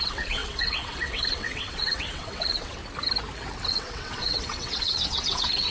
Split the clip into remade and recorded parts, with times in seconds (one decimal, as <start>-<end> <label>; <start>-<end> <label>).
0.0-2.8 remade; 2.8-3.7 recorded; 3.7-5.7 remade